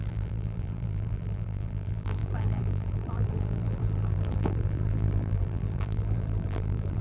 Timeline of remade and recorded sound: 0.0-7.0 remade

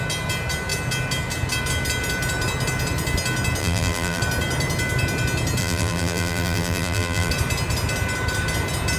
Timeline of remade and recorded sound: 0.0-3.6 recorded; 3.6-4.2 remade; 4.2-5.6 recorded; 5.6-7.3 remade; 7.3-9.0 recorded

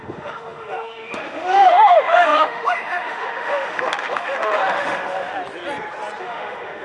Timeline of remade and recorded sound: 0.0-5.3 remade; 5.3-6.2 recorded; 6.2-6.8 remade